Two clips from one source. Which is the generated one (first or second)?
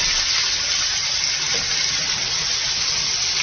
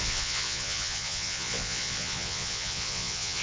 second